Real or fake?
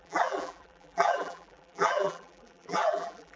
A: fake